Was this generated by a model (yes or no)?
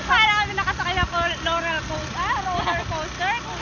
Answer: no